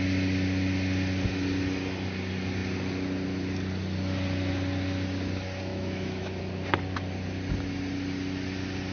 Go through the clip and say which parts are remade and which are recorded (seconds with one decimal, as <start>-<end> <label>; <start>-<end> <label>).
0.0-5.7 recorded; 5.7-6.4 remade; 6.4-8.9 recorded